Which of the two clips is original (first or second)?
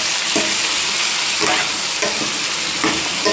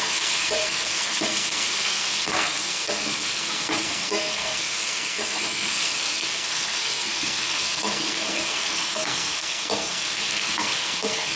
first